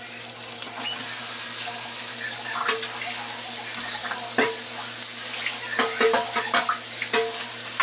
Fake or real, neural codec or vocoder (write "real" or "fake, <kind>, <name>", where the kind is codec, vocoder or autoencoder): real